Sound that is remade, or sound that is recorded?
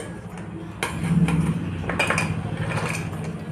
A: recorded